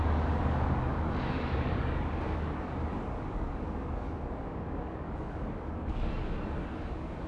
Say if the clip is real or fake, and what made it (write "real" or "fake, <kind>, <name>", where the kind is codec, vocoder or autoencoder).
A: fake, codec, DAC